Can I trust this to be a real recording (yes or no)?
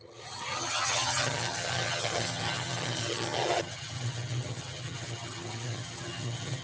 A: no